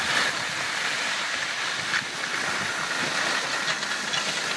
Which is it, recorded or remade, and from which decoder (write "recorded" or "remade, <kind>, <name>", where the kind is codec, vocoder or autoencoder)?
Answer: recorded